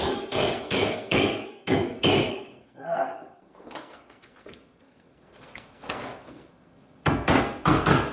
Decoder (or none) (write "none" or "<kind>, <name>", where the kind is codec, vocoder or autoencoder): codec, SNAC